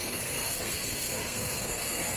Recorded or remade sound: remade